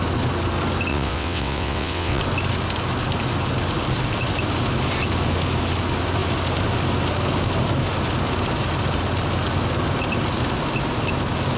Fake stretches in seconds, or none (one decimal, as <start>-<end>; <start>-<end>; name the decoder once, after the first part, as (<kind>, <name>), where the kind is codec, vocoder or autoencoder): 0.9-2.2 (vocoder, WaveNeXt)